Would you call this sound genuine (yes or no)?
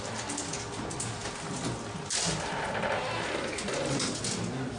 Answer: yes